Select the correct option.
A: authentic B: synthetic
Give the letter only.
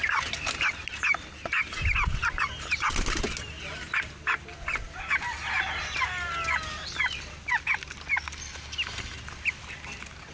A